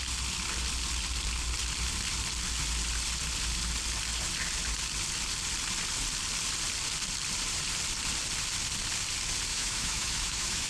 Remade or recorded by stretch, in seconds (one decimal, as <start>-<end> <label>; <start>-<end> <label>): 0.0-9.5 recorded; 9.5-10.7 remade